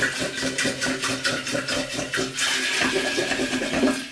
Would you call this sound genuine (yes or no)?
yes